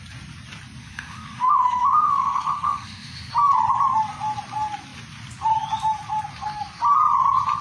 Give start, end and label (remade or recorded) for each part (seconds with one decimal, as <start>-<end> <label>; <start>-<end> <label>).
0.0-0.8 recorded; 0.8-3.3 remade; 3.3-7.6 recorded